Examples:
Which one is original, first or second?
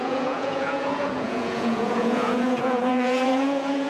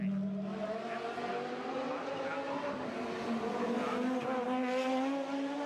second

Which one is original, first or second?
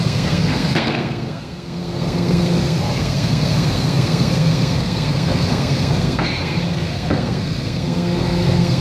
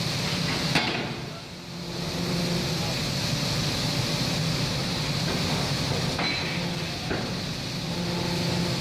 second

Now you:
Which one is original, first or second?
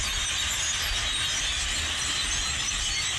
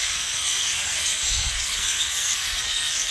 first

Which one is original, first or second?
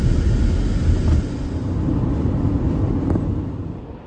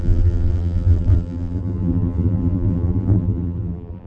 first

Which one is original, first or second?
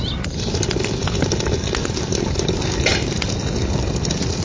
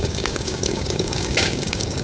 first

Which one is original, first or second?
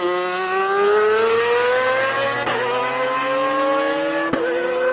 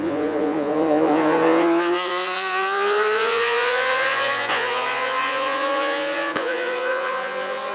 first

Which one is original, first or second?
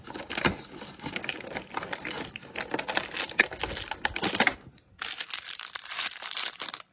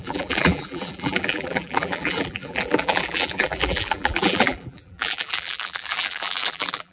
first